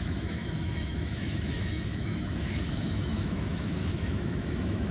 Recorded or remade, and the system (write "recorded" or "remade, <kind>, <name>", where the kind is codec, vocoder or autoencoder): remade, autoencoder, DAC-VAE